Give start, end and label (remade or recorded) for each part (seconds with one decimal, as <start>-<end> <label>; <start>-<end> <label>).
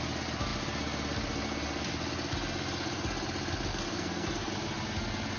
0.0-3.7 recorded; 3.7-4.5 remade; 4.5-5.4 recorded